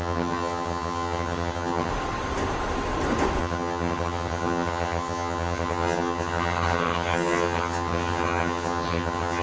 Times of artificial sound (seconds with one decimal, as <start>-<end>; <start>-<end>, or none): 0.0-1.9; 3.4-9.4

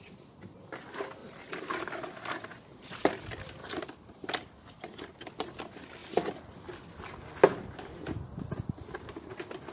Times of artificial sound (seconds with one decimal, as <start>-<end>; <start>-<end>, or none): 1.2-1.9; 3.6-4.3

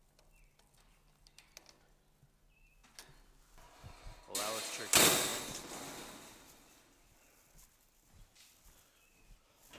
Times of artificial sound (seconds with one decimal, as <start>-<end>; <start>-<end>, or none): none

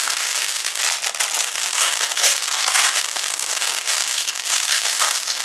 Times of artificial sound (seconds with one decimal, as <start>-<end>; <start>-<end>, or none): 0.0-0.8; 1.4-5.4

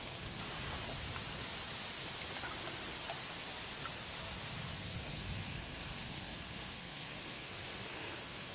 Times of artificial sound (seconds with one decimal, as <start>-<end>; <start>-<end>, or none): 0.0-0.4; 4.7-8.5

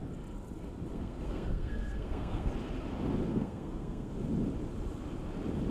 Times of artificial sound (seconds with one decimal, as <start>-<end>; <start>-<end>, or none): 0.9-2.5; 3.3-4.1

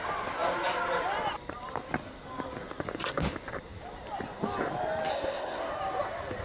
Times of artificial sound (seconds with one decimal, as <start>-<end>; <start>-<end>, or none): 5.1-5.7

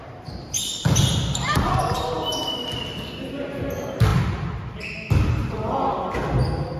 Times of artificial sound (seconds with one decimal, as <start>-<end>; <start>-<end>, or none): none